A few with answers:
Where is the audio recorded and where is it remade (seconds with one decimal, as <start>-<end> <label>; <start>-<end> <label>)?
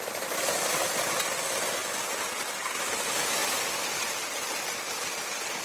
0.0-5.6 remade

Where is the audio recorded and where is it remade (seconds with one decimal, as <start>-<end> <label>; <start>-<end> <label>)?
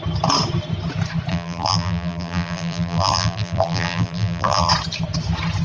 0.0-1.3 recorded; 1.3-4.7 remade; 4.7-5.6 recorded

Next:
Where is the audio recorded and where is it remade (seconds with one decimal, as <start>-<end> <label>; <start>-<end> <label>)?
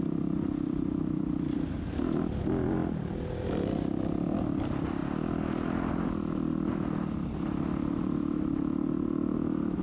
0.0-2.8 recorded; 2.8-4.6 remade; 4.6-9.8 recorded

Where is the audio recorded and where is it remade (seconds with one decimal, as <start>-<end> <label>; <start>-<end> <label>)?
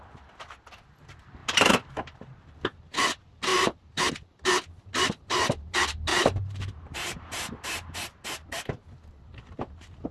0.0-1.4 recorded; 1.4-3.0 remade; 3.0-3.5 recorded; 3.5-4.1 remade; 4.1-6.1 recorded; 6.1-8.6 remade; 8.6-10.1 recorded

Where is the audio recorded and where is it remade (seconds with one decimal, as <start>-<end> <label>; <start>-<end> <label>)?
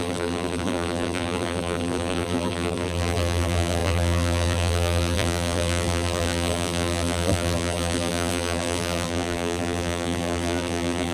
0.0-11.1 remade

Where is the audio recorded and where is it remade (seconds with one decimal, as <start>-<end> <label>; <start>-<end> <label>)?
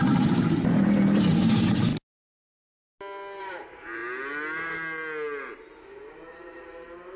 0.0-1.9 remade; 1.9-3.4 recorded; 3.4-4.0 remade; 4.0-6.1 recorded; 6.1-7.2 remade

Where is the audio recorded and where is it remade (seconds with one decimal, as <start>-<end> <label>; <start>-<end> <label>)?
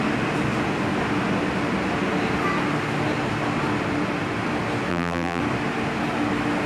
0.0-4.9 recorded; 4.9-5.4 remade; 5.4-6.7 recorded